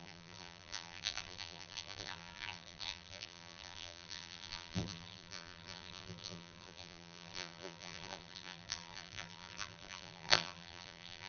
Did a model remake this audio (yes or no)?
yes